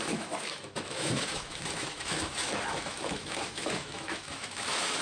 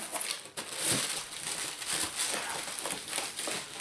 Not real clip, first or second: first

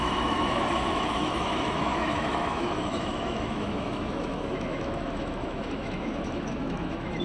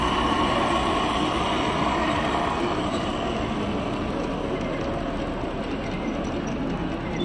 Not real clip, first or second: first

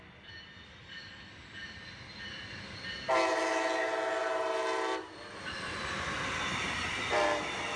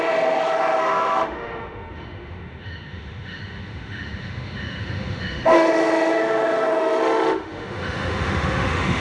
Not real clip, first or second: second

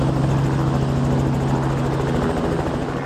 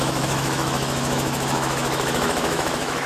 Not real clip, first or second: second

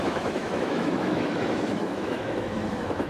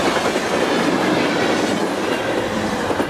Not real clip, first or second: first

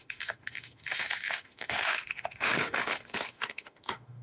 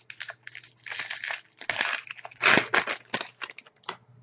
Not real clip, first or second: first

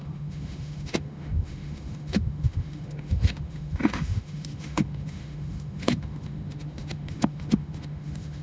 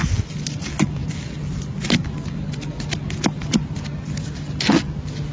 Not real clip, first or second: first